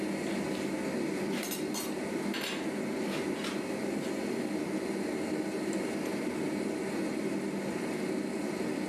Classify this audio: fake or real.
real